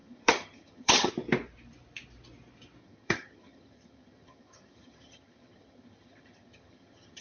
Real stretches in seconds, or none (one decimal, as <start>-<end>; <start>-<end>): 1.1-2.8